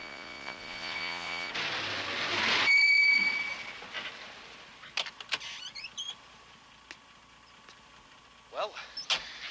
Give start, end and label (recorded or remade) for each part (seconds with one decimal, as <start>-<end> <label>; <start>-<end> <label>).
0.0-1.5 remade; 1.5-9.5 recorded